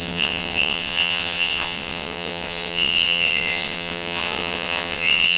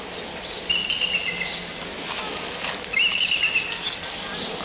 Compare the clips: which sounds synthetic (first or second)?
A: first